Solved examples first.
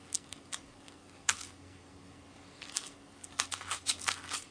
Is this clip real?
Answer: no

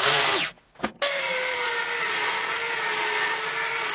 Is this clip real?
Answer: yes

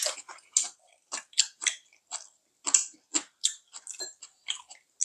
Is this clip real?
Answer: yes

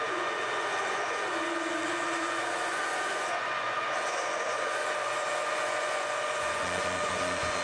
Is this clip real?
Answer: no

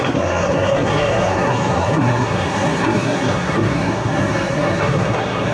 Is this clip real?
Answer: no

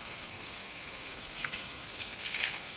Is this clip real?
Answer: no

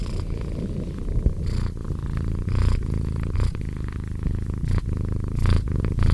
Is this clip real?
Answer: yes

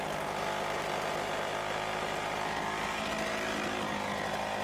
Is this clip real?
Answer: yes